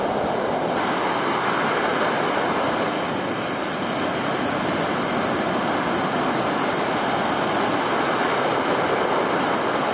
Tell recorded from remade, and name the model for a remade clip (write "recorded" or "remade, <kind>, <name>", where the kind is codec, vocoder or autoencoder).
recorded